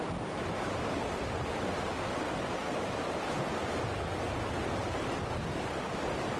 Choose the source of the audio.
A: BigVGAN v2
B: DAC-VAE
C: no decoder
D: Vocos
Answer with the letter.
C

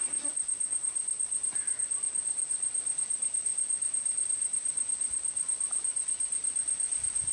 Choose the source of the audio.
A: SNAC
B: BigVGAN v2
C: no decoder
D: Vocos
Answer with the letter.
C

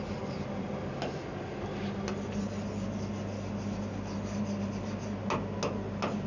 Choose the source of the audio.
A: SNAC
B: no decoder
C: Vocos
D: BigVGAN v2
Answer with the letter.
B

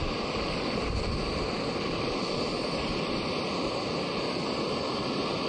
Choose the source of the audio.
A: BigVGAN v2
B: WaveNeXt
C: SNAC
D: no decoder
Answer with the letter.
D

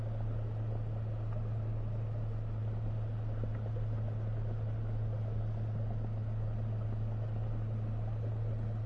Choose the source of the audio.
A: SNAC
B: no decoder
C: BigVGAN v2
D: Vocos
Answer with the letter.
B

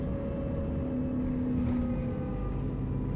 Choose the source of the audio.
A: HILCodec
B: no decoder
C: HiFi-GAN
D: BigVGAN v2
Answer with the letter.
B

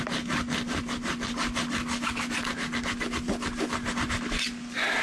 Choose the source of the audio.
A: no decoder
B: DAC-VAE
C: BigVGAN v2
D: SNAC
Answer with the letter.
A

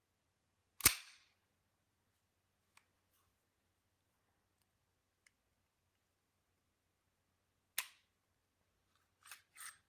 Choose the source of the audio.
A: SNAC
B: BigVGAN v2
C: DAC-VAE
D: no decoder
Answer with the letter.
D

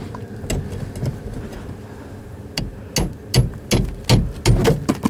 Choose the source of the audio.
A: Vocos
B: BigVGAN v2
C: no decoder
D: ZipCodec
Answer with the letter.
C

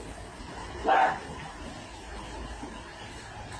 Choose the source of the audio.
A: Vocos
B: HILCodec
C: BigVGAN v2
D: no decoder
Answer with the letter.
D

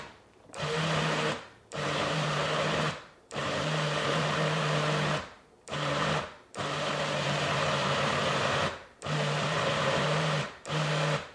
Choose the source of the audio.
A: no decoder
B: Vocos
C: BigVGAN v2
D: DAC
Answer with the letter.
C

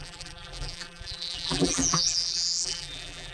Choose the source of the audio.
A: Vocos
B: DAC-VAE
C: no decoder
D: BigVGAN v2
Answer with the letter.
D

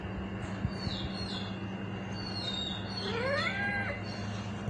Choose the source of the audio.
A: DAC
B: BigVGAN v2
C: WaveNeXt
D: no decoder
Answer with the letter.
D